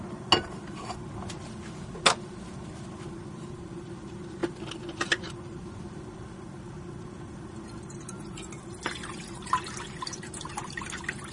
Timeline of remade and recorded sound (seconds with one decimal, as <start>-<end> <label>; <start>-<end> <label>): 0.0-11.3 recorded